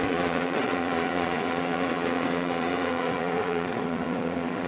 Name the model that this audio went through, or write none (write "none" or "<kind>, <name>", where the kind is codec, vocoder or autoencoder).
vocoder, Vocos